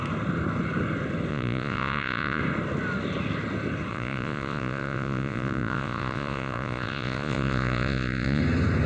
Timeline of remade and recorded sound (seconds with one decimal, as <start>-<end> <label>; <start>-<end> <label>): 0.0-1.3 recorded; 1.3-2.4 remade; 2.4-3.9 recorded; 3.9-8.4 remade; 8.4-8.9 recorded